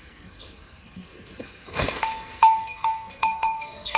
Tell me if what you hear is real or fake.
fake